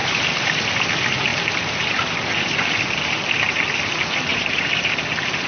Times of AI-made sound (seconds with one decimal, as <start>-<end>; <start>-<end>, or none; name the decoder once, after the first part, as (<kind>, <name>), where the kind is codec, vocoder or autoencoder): 0.0-0.7 (vocoder, BigVGAN v2); 1.3-2.3; 4.3-5.0